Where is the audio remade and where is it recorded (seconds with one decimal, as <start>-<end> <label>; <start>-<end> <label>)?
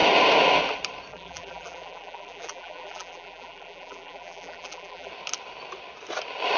0.0-1.1 recorded; 1.1-5.1 remade; 5.1-6.6 recorded